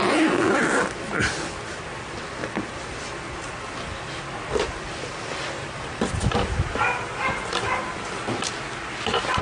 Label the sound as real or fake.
real